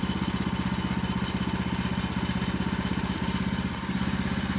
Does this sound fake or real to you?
real